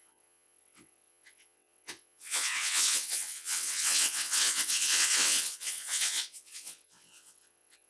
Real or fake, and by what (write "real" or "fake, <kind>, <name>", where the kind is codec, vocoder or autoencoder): fake, vocoder, WaveNeXt